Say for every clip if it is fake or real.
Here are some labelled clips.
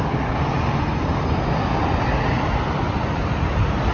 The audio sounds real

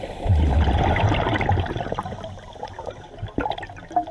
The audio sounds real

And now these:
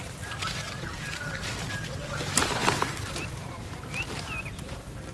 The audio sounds real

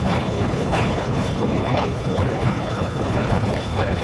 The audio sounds fake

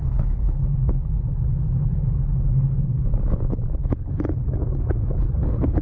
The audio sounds fake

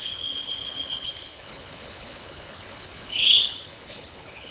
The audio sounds fake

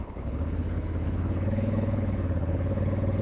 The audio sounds fake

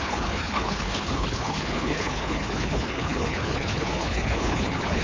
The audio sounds fake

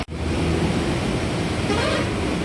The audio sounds real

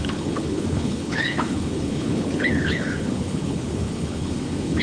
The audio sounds fake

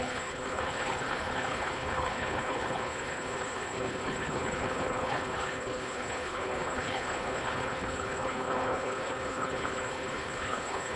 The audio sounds fake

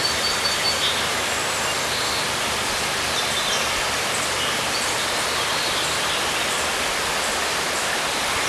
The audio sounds real